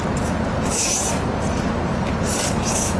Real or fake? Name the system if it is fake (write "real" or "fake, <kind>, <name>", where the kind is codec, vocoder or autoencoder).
fake, vocoder, BigVGAN v2